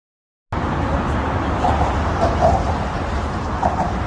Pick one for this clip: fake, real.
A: real